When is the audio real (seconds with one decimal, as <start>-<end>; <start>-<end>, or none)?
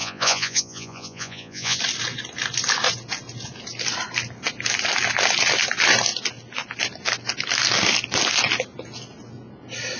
1.8-10.0